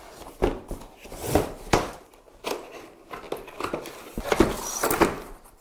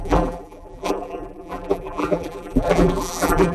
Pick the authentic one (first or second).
first